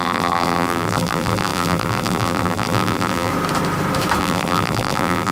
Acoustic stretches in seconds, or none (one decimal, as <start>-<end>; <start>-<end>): 3.3-4.2